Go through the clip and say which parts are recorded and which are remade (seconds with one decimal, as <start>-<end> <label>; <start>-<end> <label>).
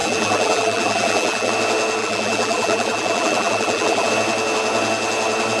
0.0-1.5 remade; 1.5-2.0 recorded; 2.0-4.1 remade; 4.1-5.6 recorded